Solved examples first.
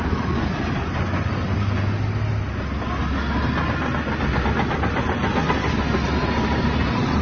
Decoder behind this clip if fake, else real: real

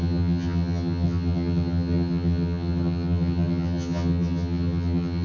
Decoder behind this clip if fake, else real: fake, vocoder, HiFi-GAN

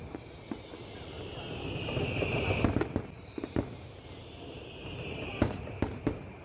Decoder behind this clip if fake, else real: real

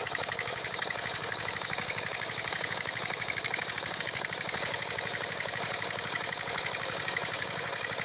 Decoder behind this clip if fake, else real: fake, codec, DAC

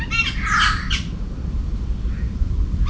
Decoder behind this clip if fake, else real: real